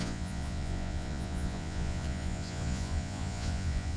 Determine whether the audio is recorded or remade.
remade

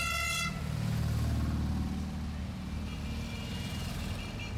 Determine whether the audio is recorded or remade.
recorded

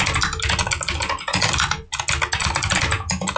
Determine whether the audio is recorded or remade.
recorded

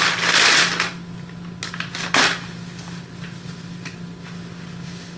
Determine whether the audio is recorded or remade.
recorded